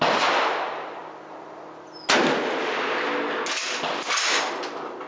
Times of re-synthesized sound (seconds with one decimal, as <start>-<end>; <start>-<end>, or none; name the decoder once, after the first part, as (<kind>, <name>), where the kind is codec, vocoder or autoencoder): none